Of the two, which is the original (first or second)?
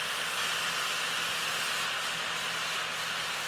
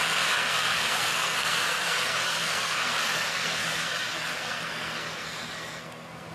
first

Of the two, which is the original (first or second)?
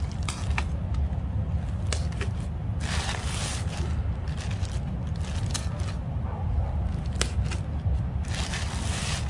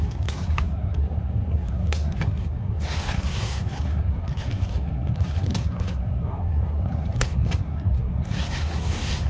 first